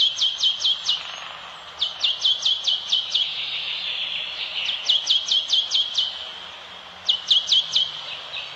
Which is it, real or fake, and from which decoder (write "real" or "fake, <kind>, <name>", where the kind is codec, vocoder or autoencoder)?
real